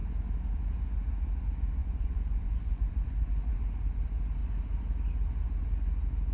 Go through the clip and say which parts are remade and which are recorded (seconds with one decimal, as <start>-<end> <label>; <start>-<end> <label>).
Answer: 0.0-1.8 recorded; 1.8-3.5 remade; 3.5-6.3 recorded